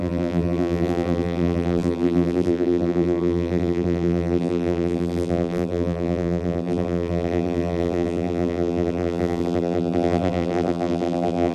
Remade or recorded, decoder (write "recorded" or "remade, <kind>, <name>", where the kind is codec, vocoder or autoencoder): remade, vocoder, BigVGAN v2